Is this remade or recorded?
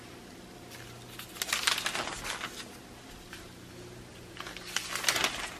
recorded